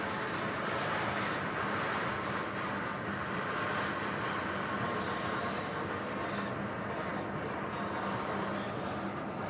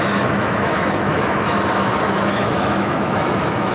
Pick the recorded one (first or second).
first